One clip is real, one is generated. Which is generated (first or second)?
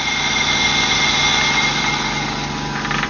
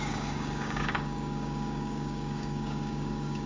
second